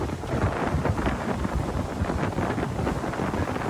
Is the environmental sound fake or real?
real